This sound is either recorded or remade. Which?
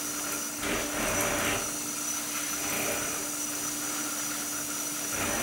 recorded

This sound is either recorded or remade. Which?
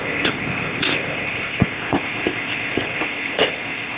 remade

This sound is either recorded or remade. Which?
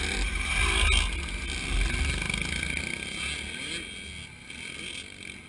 recorded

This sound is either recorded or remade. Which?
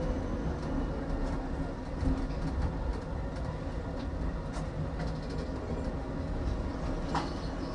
recorded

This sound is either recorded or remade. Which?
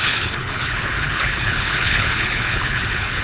remade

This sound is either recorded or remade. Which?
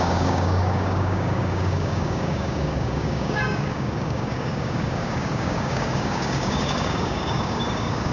remade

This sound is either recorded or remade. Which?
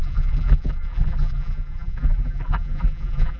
remade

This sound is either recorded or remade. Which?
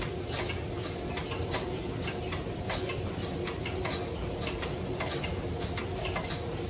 recorded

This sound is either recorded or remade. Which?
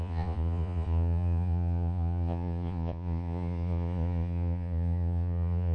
remade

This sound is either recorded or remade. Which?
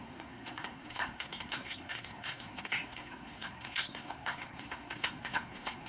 remade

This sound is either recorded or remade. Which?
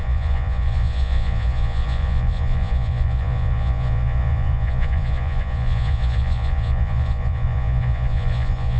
remade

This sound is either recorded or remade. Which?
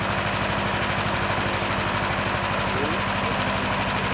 recorded